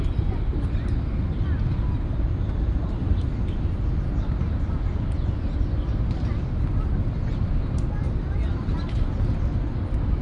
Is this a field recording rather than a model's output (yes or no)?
yes